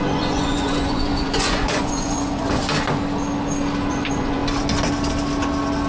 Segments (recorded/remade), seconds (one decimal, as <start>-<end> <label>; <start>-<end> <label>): 0.0-2.6 remade; 2.6-3.9 recorded; 3.9-4.4 remade; 4.4-5.9 recorded